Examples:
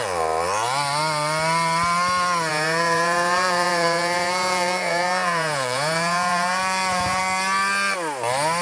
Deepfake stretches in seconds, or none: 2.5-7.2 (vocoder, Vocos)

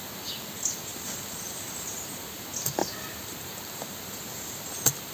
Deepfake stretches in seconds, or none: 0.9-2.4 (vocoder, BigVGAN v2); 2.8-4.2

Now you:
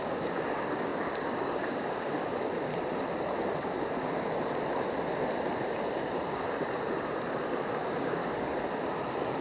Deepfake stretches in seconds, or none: 0.0-2.7 (codec, DAC); 7.8-8.2